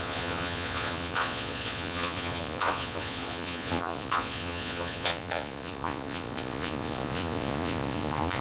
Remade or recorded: remade